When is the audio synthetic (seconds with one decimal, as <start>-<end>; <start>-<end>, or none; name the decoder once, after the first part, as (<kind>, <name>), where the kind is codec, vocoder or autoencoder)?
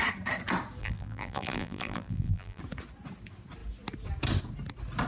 0.8-2.6 (vocoder, BigVGAN v2)